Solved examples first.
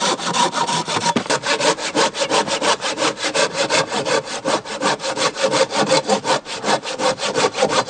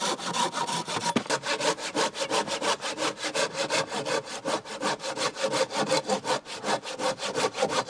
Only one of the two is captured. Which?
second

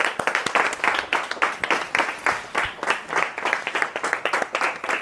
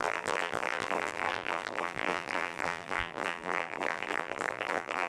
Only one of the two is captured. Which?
first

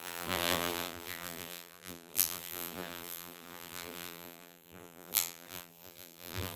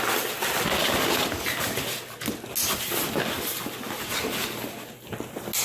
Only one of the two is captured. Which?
second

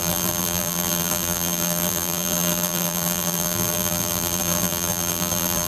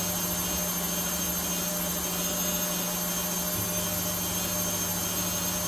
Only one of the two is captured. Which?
second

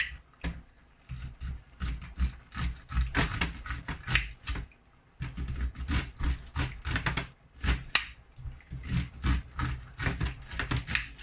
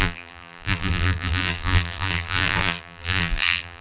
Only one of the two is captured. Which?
first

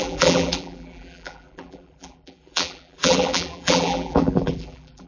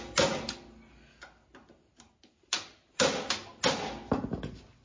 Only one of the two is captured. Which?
second